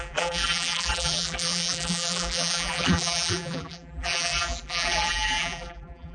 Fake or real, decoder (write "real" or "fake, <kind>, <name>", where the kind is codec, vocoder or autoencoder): fake, vocoder, BigVGAN v2